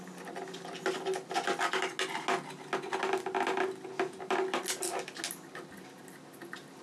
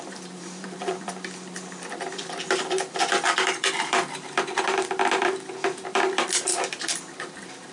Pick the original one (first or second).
first